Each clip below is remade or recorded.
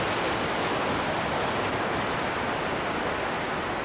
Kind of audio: recorded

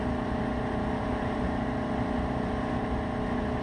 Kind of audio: recorded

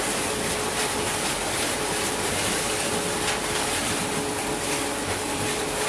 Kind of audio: recorded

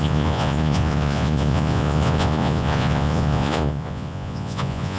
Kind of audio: remade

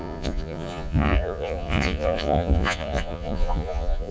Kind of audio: remade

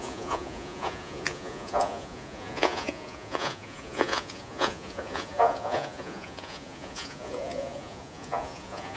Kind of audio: remade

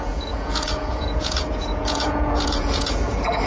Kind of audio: remade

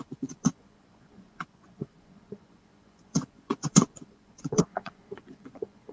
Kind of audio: remade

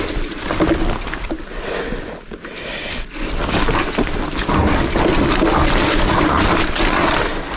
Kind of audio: recorded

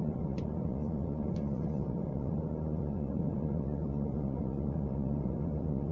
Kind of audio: remade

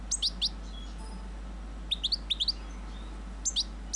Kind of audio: recorded